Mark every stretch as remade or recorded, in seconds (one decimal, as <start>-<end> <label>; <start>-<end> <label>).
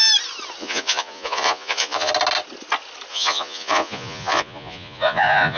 0.0-0.6 recorded; 0.6-2.1 remade; 2.1-3.1 recorded; 3.1-5.6 remade